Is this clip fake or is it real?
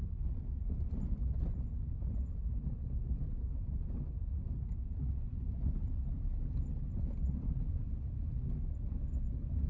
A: real